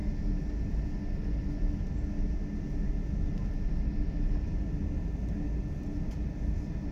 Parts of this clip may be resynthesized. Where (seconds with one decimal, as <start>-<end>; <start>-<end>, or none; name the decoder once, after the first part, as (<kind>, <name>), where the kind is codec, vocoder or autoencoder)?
none